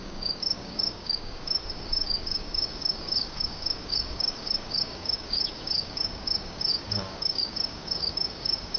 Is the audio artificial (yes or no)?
yes